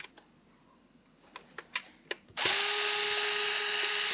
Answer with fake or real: real